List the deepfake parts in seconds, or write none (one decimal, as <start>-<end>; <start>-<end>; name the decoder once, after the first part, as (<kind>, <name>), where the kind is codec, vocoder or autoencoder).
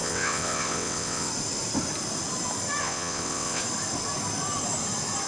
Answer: 0.0-1.3 (vocoder, WaveNeXt); 2.8-3.6